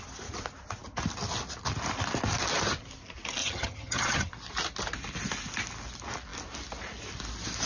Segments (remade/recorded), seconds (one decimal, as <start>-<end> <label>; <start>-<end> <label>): 0.0-3.4 recorded; 3.4-4.3 remade; 4.3-7.7 recorded